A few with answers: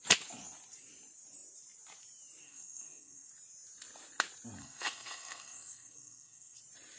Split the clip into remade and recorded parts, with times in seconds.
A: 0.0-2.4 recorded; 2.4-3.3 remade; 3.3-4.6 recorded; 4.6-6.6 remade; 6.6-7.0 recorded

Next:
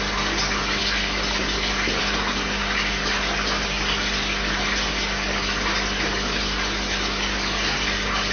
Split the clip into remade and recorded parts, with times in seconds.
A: 0.0-8.3 recorded

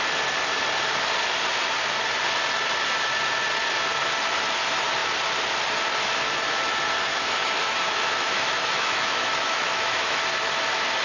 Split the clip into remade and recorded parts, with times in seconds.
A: 0.0-7.1 recorded; 7.1-10.2 remade; 10.2-11.0 recorded

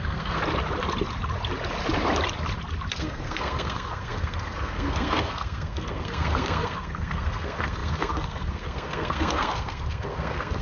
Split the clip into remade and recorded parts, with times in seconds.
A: 0.0-0.4 remade; 0.4-2.9 recorded; 2.9-10.6 remade

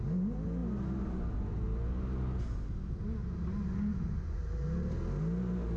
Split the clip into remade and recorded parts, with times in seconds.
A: 0.0-3.9 recorded; 3.9-4.4 remade; 4.4-5.8 recorded

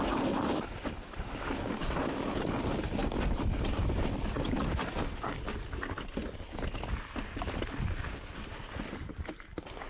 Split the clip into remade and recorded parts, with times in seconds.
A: 0.0-3.0 recorded; 3.0-6.5 remade; 6.5-8.1 recorded; 8.1-9.9 remade

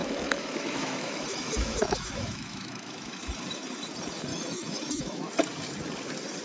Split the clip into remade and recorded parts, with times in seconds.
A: 0.0-3.2 remade; 3.2-4.3 recorded; 4.3-5.3 remade; 5.3-6.4 recorded